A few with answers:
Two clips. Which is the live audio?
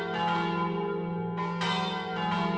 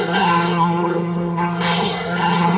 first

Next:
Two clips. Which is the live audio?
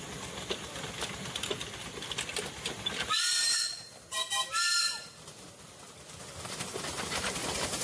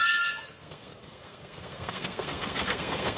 first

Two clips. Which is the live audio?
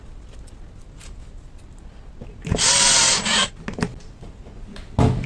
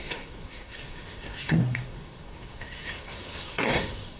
first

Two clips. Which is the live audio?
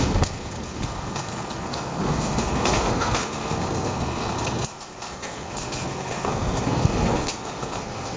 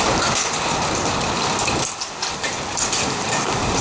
second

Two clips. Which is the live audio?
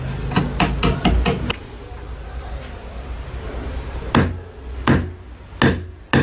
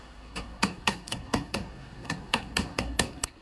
first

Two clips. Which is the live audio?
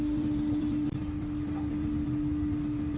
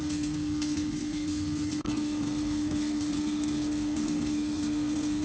first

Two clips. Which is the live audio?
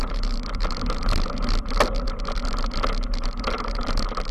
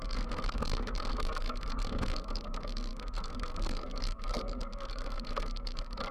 first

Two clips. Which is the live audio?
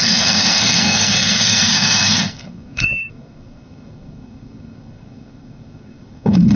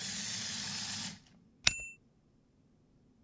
second